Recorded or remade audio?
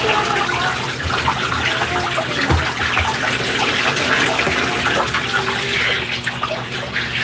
recorded